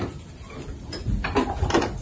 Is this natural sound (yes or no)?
yes